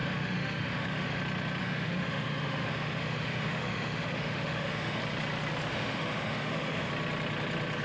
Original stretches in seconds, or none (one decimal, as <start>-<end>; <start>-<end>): 1.2-1.6; 5.0-5.7; 6.9-7.8